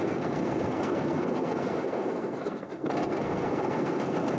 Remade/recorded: remade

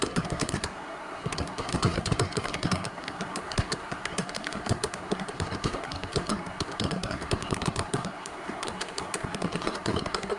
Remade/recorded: remade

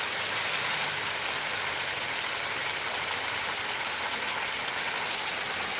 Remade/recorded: recorded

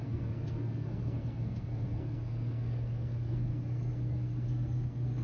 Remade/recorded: remade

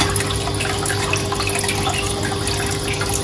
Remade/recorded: recorded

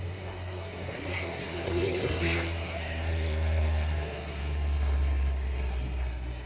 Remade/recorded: remade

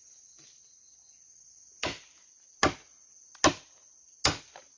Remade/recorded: recorded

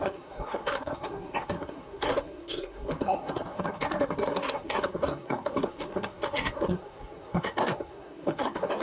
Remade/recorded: remade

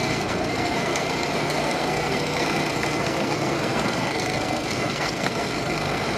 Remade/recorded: remade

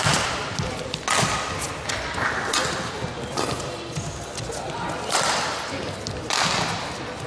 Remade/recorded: recorded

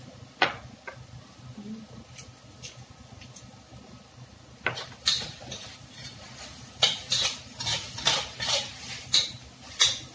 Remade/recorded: recorded